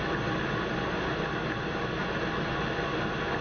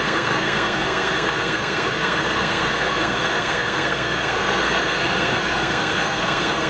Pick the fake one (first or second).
second